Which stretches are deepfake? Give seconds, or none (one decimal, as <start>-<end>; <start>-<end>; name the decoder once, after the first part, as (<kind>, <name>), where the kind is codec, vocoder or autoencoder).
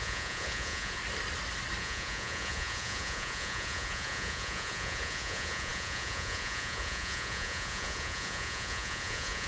0.0-1.0 (vocoder, Vocos); 1.8-9.5